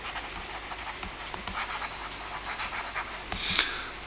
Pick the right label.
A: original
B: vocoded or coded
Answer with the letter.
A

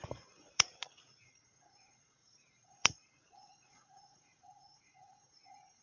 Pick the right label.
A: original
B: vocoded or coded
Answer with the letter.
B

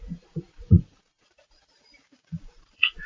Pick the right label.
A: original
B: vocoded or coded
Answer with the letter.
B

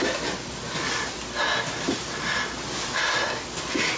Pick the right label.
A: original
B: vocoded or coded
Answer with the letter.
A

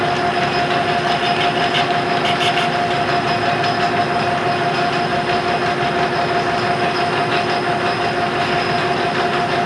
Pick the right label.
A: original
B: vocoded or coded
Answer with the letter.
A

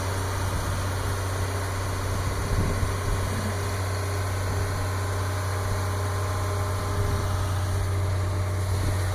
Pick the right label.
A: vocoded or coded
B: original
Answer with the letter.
B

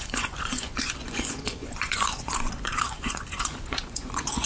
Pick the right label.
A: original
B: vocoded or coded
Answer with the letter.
B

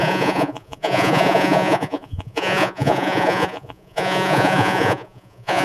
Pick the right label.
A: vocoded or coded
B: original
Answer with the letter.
A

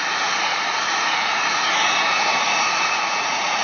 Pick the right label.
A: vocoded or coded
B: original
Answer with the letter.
A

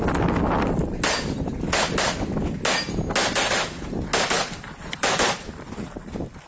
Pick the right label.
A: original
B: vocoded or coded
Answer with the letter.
A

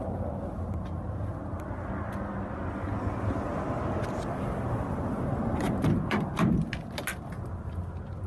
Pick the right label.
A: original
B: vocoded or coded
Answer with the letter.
A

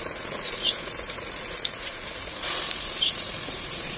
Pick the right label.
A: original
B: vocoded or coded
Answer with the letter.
B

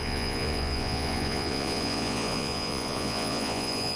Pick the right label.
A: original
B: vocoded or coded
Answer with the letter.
B